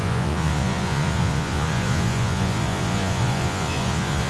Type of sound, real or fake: fake